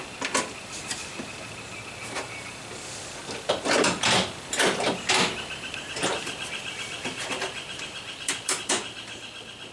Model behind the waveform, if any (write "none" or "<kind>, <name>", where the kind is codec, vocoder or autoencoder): vocoder, BigVGAN v2